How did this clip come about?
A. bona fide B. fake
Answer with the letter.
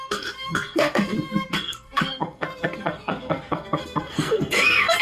B